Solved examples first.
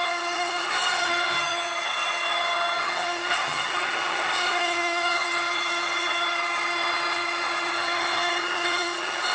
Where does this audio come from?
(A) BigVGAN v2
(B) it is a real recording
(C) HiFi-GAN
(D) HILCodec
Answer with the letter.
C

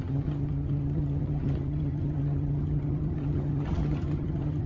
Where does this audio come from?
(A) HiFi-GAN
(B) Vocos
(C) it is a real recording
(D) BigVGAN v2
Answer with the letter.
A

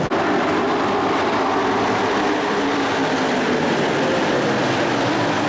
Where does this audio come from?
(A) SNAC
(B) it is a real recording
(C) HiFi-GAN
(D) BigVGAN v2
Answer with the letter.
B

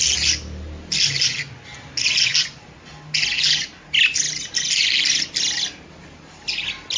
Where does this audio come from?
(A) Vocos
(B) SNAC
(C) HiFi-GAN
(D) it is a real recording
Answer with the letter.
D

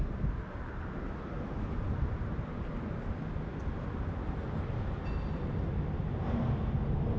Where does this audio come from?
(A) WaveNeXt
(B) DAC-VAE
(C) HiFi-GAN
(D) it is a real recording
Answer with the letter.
D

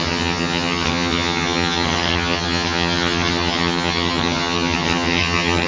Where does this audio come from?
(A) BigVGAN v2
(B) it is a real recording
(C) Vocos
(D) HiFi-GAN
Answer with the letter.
D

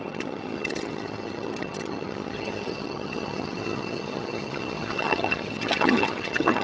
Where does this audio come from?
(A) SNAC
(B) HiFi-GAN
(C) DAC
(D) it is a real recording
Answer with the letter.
B